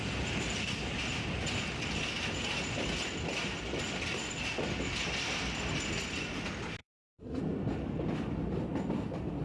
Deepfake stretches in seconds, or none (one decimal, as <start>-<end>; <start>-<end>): 6.8-7.4